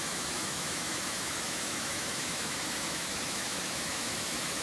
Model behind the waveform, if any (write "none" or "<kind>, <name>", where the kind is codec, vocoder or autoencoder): autoencoder, DAC-VAE